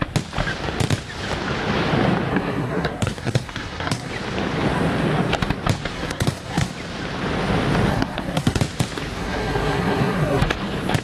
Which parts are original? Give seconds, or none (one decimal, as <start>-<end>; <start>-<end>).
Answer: 0.0-2.3; 4.1-5.9; 6.7-7.9; 8.6-9.2; 10.4-11.0